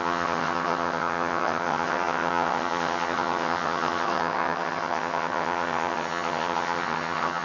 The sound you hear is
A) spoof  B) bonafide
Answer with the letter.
A